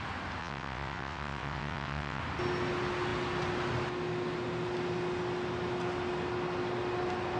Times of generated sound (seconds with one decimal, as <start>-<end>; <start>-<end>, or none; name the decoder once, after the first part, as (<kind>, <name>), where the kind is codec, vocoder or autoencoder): 0.4-2.2 (vocoder, WaveNeXt)